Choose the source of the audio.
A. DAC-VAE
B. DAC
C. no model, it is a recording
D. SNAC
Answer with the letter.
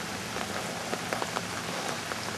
C